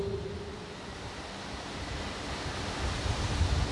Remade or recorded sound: recorded